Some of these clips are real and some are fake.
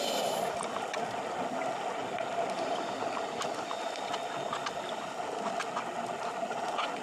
real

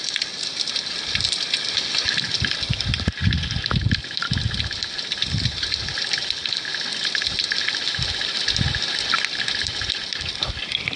real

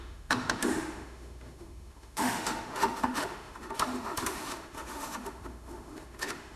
fake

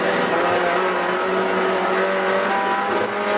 real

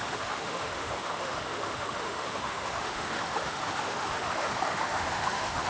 fake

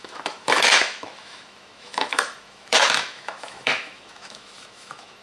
fake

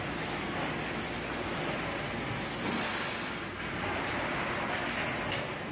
real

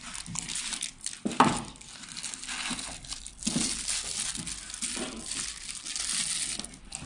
real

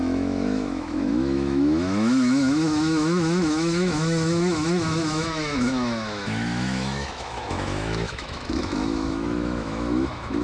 fake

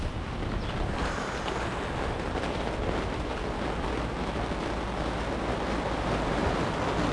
real